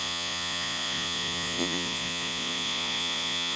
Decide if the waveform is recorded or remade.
remade